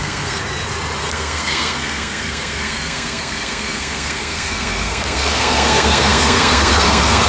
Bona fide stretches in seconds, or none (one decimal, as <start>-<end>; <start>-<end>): 0.4-1.0